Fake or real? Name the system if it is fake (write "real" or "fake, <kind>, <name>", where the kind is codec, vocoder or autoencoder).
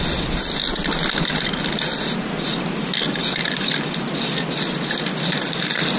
real